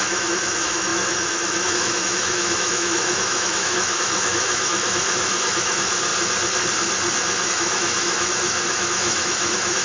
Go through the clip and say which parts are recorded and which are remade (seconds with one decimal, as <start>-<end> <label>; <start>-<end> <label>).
0.0-6.1 remade; 6.1-7.5 recorded; 7.5-9.8 remade